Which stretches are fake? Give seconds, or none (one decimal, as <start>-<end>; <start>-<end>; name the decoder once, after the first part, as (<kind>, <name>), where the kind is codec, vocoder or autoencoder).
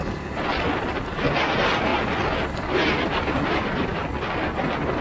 none